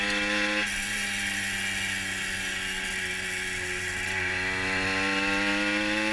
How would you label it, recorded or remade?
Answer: recorded